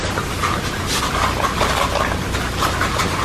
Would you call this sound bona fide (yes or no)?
yes